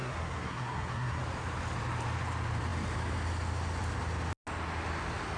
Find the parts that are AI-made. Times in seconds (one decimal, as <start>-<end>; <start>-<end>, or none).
0.0-1.2